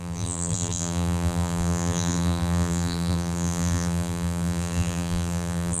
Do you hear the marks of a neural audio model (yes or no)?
yes